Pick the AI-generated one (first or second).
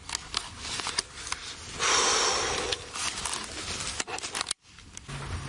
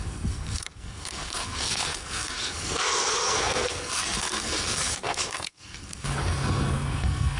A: second